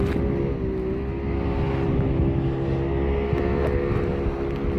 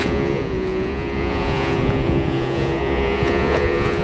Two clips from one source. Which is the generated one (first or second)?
second